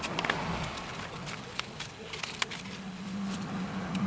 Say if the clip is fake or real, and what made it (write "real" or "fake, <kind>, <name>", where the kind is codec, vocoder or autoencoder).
real